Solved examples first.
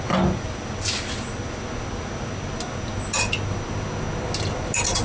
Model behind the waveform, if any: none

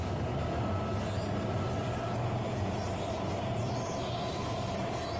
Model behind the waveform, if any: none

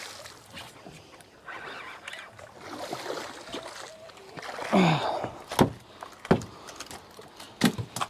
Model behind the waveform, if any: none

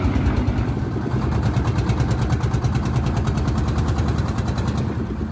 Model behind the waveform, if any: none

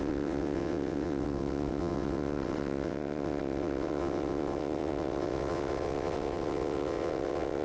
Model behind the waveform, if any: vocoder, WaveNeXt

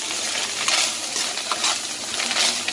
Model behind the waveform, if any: none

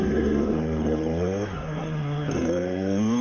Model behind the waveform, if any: codec, SNAC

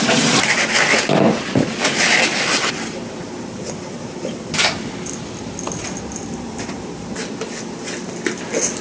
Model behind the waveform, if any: none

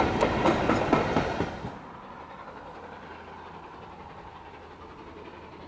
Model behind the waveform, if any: none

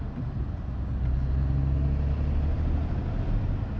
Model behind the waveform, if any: none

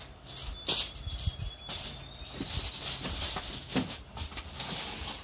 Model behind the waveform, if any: none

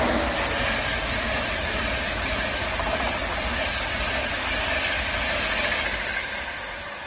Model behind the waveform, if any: none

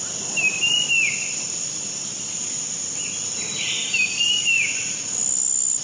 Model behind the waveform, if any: vocoder, BigVGAN v2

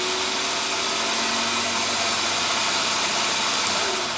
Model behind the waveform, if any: none